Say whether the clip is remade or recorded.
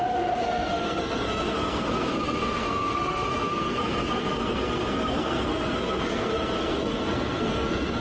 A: remade